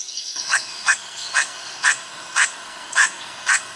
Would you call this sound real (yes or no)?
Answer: no